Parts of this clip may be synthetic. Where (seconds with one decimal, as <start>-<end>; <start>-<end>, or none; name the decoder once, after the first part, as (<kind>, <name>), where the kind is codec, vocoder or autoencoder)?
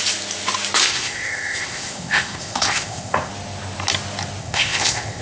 0.8-3.3 (codec, ZipCodec); 4.4-5.2